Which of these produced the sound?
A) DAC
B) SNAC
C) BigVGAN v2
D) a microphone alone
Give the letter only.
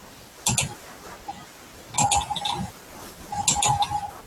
D